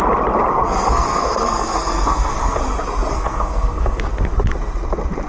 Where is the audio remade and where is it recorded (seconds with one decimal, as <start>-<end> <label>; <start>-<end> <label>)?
0.0-0.5 recorded; 0.5-2.6 remade; 2.6-3.1 recorded; 3.1-4.0 remade; 4.0-5.3 recorded